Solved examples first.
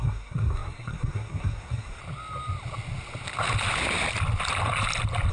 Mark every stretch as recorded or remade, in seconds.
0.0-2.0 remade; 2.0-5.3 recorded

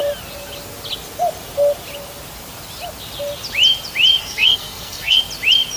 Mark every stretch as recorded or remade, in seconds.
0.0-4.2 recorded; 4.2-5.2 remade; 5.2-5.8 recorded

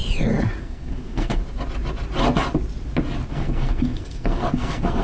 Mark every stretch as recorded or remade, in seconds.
0.0-0.6 recorded; 0.6-1.4 remade; 1.4-3.3 recorded; 3.3-5.0 remade